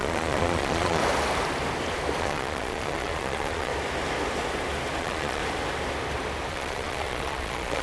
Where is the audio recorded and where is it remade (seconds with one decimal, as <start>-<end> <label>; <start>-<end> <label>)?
0.0-1.0 remade; 1.0-2.2 recorded; 2.2-3.7 remade; 3.7-5.0 recorded; 5.0-5.4 remade; 5.4-6.5 recorded; 6.5-7.8 remade